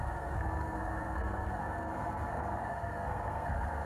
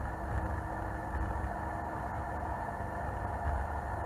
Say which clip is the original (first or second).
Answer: second